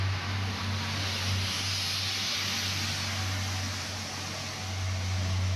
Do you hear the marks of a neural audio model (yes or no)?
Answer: no